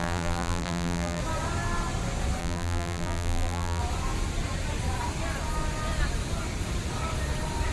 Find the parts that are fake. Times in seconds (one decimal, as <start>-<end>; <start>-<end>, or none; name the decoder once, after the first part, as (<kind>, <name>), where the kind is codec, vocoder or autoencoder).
0.0-1.2 (vocoder, BigVGAN v2); 2.4-3.8